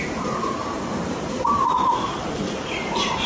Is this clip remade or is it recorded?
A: remade